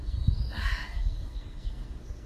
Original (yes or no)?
no